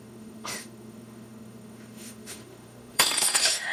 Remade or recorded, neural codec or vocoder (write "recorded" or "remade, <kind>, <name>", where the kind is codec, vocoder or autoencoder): remade, autoencoder, DAC-VAE